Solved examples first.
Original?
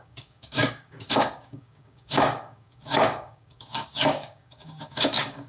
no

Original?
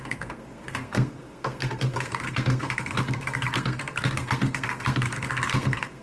no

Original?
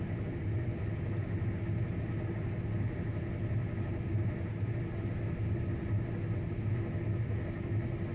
yes